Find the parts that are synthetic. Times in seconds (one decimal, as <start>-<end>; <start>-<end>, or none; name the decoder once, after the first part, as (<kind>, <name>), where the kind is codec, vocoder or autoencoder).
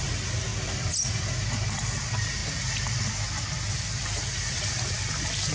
0.0-0.5 (vocoder, BigVGAN v2); 1.7-2.4; 3.7-5.5